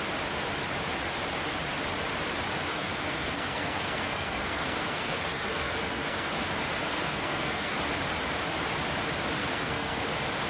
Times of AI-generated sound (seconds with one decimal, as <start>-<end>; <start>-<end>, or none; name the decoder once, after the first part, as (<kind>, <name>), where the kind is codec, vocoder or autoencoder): 2.7-6.3 (codec, SNAC); 6.8-7.8; 9.4-10.0